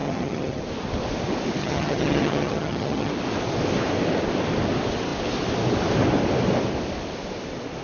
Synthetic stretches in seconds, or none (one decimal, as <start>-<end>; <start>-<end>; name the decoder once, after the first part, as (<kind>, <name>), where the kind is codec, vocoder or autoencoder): 0.0-0.6 (vocoder, HiFi-GAN); 1.6-3.1